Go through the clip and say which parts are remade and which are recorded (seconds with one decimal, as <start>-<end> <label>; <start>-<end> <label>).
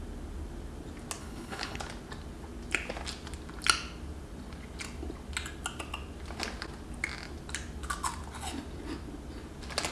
0.0-1.2 recorded; 1.2-1.8 remade; 1.8-9.9 recorded